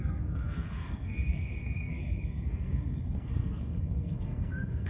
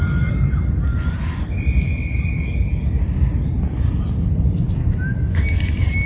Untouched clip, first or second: second